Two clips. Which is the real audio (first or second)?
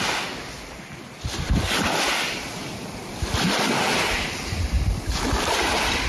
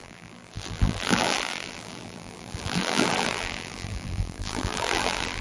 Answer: first